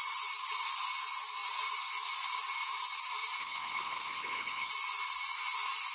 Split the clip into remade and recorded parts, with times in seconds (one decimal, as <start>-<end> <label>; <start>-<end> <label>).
0.0-3.4 recorded; 3.4-4.7 remade; 4.7-5.9 recorded

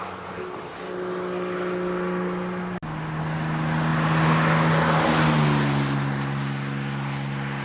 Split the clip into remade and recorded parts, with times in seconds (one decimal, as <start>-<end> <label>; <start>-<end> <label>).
0.0-7.6 recorded

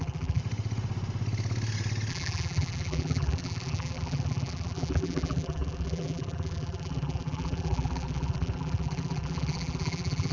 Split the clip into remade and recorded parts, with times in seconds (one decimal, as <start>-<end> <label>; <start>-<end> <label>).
0.0-0.4 remade; 0.4-2.1 recorded; 2.1-10.3 remade

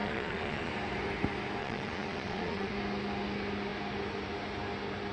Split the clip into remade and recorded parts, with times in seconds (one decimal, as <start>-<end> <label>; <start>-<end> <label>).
0.0-0.7 remade; 0.7-1.6 recorded; 1.6-2.7 remade; 2.7-5.1 recorded

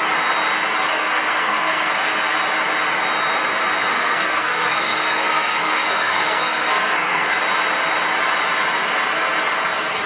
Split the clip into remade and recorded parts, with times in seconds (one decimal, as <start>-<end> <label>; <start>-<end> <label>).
0.0-0.9 recorded; 0.9-1.9 remade; 1.9-3.9 recorded; 3.9-7.4 remade; 7.4-10.1 recorded

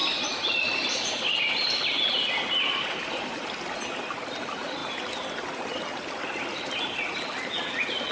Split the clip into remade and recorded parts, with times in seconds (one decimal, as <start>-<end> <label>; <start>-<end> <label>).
0.0-8.1 recorded